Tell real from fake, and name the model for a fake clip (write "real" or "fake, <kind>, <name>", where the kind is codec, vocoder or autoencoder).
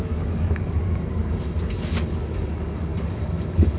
fake, codec, DAC